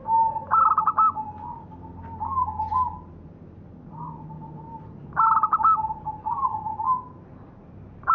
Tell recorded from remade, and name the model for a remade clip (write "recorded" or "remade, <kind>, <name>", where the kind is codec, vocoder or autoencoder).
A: recorded